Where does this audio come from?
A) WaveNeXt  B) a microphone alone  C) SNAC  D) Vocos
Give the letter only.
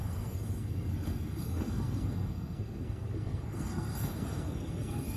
C